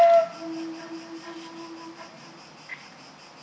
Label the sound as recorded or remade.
recorded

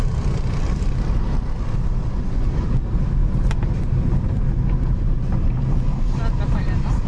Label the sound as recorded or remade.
recorded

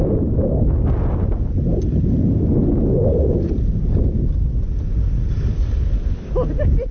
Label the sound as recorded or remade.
recorded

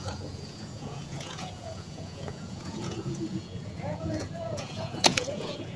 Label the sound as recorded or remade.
remade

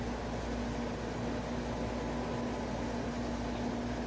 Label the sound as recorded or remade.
recorded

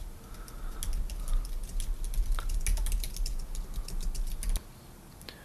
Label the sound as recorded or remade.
recorded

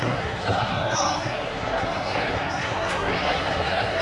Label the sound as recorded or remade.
remade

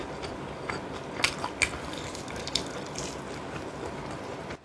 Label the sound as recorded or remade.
recorded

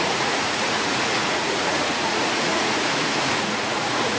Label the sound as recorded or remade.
remade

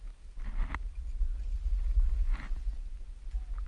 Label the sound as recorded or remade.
recorded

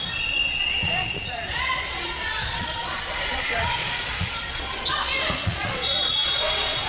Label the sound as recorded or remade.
remade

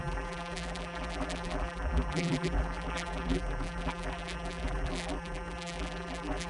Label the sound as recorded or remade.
remade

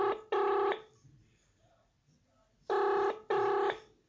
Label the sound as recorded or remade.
recorded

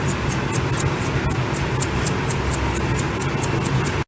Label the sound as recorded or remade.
recorded